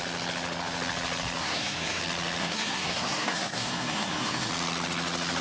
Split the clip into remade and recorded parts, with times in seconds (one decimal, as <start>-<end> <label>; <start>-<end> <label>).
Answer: 0.0-1.4 recorded; 1.4-2.0 remade; 2.0-2.4 recorded; 2.4-4.5 remade; 4.5-5.4 recorded